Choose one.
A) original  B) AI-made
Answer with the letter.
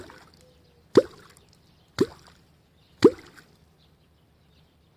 A